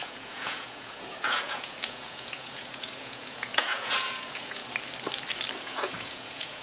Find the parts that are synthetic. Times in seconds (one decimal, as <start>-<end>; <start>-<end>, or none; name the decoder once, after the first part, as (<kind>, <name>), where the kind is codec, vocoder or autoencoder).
0.0-4.6 (vocoder, Vocos); 5.6-6.6